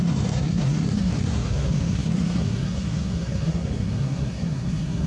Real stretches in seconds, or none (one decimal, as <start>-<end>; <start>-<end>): none